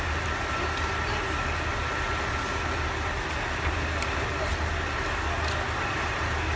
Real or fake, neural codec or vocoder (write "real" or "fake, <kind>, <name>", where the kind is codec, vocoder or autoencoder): real